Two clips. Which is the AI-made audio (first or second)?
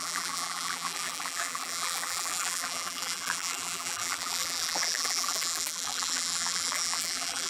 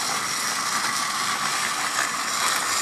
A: first